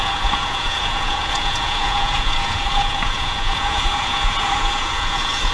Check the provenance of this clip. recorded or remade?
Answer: remade